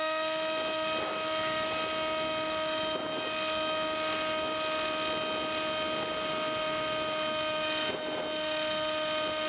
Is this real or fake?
real